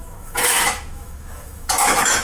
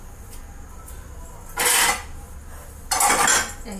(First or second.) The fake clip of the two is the first